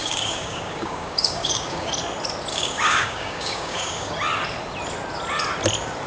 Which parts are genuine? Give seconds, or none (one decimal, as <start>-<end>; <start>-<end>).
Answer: 1.9-2.5; 4.1-6.1